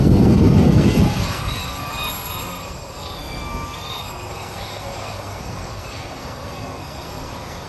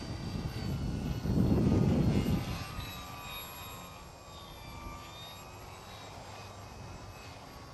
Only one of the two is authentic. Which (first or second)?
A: second